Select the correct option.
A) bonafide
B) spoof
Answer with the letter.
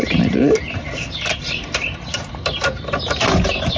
A